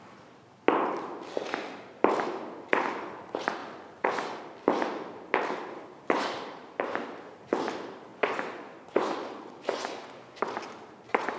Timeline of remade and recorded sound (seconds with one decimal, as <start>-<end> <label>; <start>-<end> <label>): 0.0-3.6 recorded; 3.6-4.4 remade; 4.4-8.1 recorded; 8.1-10.4 remade; 10.4-11.4 recorded

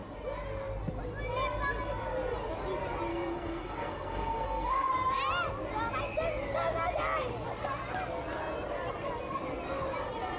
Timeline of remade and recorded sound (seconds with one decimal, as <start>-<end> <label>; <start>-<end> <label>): 0.0-3.1 recorded; 3.1-4.9 remade; 4.9-10.4 recorded